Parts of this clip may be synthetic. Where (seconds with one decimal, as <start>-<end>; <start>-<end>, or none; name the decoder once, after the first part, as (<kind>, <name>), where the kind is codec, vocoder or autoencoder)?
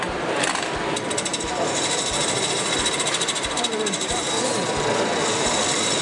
1.3-4.3 (vocoder, BigVGAN v2); 5.2-6.0